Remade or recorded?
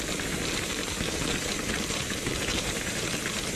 remade